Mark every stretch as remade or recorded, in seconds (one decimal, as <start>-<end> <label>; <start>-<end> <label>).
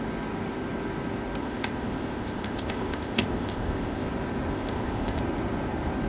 0.0-1.4 recorded; 1.4-4.1 remade; 4.1-4.5 recorded; 4.5-5.2 remade; 5.2-6.1 recorded